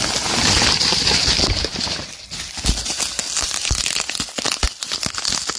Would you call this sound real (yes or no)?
yes